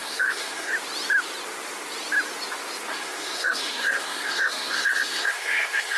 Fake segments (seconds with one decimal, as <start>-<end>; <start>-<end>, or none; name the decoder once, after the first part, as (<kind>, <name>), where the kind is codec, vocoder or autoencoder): 0.0-0.7 (codec, SNAC); 2.9-6.0